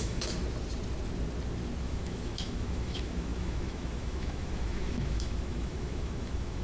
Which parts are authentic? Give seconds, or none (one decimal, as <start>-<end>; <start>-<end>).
0.4-1.8